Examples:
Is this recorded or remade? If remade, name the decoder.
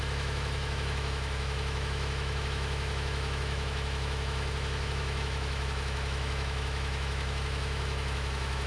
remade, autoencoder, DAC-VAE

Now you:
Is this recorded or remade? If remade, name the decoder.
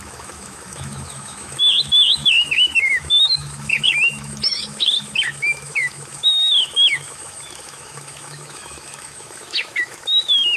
remade, autoencoder, DAC-VAE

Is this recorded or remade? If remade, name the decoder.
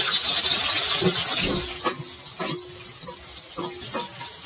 recorded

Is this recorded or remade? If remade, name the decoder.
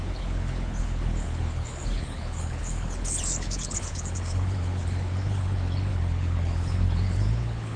remade, codec, HILCodec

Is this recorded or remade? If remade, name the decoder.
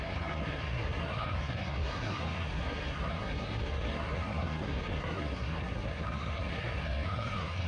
remade, codec, SNAC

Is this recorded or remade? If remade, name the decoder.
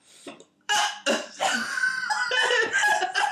remade, vocoder, BigVGAN v2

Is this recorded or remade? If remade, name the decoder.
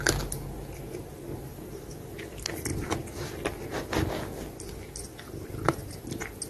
recorded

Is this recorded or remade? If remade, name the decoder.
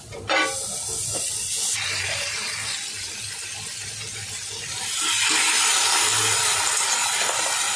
recorded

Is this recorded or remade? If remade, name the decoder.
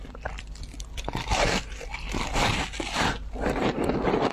remade, vocoder, BigVGAN v2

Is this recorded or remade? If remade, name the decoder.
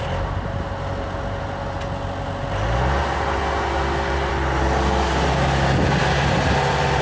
recorded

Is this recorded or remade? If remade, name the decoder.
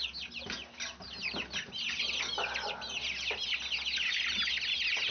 recorded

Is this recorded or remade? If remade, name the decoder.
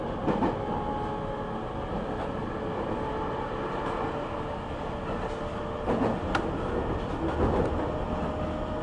recorded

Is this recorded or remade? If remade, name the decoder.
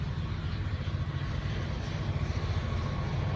recorded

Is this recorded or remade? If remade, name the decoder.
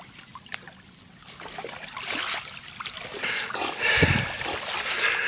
recorded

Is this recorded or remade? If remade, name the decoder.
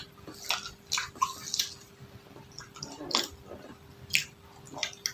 recorded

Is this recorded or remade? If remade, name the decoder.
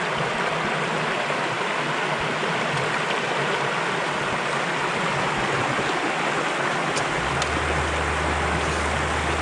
recorded